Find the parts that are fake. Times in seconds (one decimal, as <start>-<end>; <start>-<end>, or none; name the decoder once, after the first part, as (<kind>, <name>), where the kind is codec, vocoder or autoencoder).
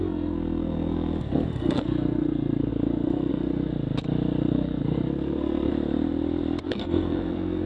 0.0-3.7 (codec, SNAC); 4.4-5.7; 6.6-7.7